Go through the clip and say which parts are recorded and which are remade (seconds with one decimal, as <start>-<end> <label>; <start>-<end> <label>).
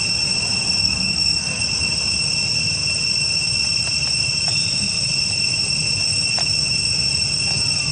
0.0-0.8 recorded; 0.8-1.6 remade; 1.6-7.9 recorded